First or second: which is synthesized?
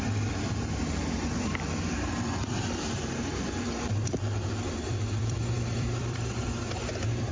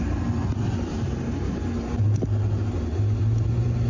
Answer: first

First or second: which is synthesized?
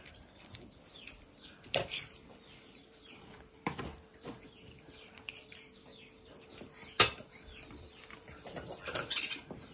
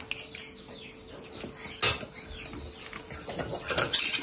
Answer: first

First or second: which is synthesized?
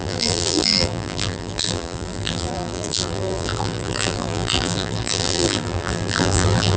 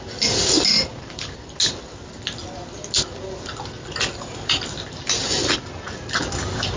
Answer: first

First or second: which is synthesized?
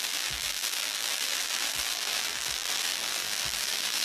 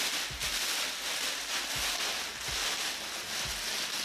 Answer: first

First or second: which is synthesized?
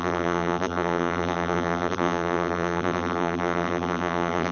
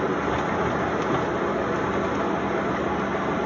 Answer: first